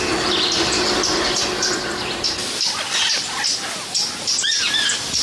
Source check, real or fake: real